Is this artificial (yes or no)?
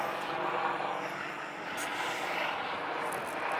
no